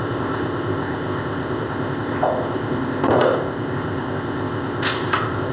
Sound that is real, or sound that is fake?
fake